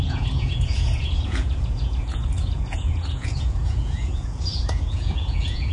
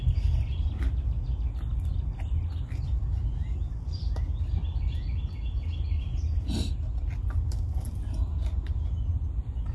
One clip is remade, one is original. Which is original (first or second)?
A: second